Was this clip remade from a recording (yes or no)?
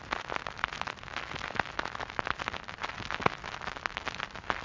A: no